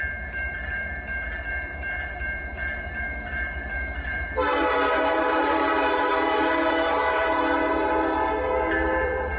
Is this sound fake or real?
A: fake